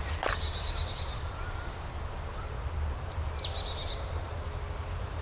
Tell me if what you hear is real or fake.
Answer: real